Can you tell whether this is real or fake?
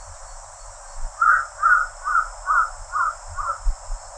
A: real